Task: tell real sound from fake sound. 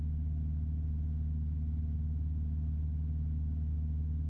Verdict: real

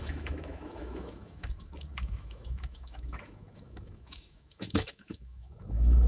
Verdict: fake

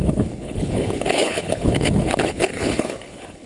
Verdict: fake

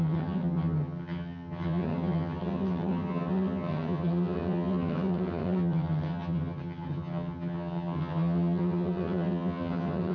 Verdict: fake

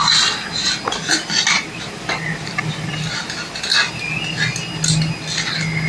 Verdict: real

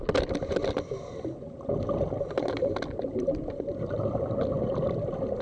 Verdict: real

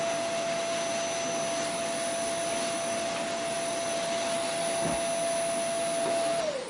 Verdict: real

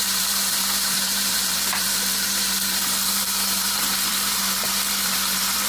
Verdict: fake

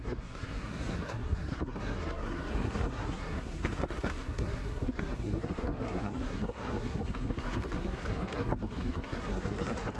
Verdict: fake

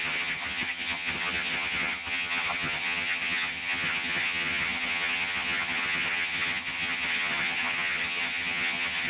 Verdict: fake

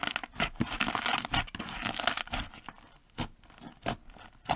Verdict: real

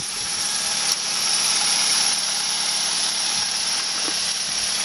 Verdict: fake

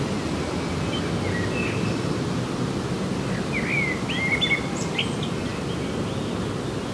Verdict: real